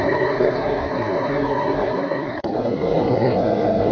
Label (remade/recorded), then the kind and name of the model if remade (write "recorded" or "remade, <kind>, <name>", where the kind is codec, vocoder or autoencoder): remade, codec, SNAC